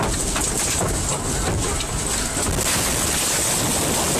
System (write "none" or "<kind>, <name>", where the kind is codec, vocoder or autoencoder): none